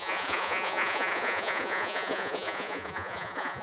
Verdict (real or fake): fake